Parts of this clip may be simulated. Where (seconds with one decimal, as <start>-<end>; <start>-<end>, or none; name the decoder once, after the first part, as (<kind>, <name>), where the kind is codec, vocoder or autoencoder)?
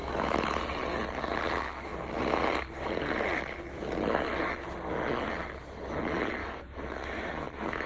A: 0.0-0.6 (autoencoder, DAC-VAE); 6.4-7.9